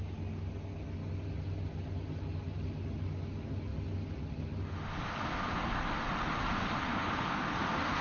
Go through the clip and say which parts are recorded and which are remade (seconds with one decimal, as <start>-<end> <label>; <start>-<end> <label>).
0.0-6.9 recorded; 6.9-7.6 remade; 7.6-8.0 recorded